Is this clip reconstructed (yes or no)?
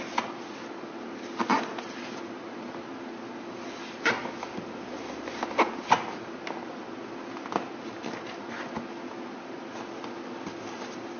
no